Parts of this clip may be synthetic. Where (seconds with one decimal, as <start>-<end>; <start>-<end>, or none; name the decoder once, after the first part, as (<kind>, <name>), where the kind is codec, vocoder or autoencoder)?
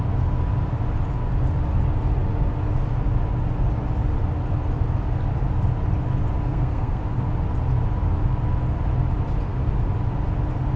6.5-7.0 (codec, SNAC)